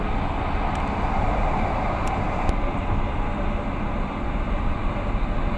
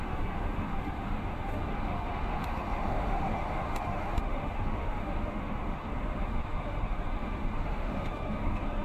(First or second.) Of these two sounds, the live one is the first